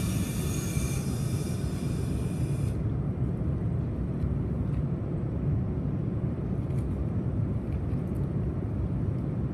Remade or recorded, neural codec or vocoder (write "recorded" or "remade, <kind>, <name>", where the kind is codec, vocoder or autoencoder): recorded